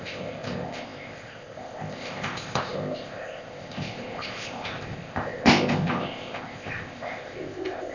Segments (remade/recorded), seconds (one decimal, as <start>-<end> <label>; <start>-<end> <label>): 0.0-7.9 remade